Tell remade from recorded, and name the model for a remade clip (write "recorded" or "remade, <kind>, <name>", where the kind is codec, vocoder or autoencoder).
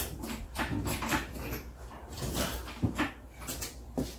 remade, vocoder, BigVGAN v2